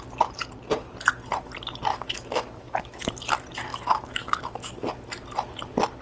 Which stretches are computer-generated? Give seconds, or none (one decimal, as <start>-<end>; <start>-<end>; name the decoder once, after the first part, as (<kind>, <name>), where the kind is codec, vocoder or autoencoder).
1.9-3.1 (autoencoder, DAC-VAE); 3.7-4.7